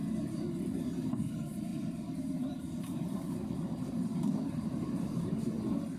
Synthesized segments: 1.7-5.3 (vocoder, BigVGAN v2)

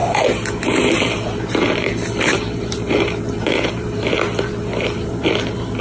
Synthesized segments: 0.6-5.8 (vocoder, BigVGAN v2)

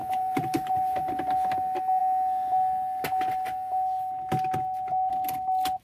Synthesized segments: 0.0-1.1 (vocoder, BigVGAN v2)

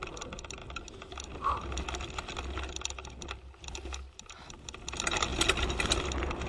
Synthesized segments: none

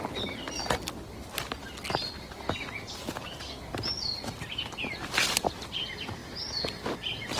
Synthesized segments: none